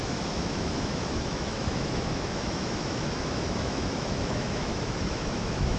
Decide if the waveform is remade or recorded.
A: remade